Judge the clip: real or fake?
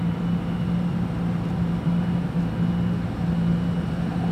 real